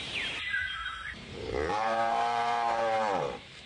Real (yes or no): no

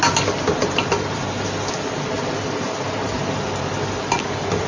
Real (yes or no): yes